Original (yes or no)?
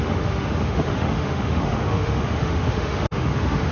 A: no